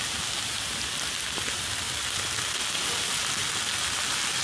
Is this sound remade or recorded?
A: recorded